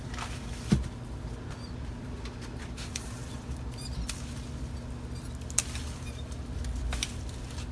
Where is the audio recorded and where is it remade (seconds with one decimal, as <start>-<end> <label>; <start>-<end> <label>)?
0.0-3.9 remade; 3.9-5.8 recorded; 5.8-7.7 remade